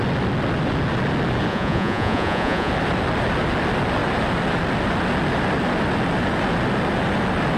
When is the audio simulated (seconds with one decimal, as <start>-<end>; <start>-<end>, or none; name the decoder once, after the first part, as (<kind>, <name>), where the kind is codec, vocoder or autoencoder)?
1.5-2.7 (vocoder, Vocos)